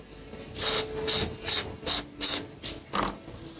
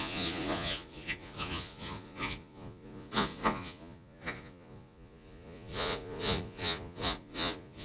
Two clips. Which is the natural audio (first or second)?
first